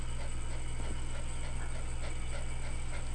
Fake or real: real